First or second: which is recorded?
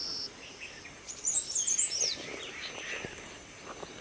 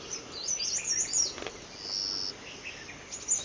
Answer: second